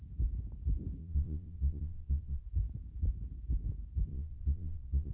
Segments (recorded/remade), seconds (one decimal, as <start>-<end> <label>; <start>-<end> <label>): 0.0-1.0 recorded; 1.0-2.4 remade; 2.4-4.1 recorded; 4.1-5.1 remade